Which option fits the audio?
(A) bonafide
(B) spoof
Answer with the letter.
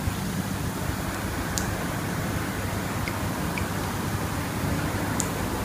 B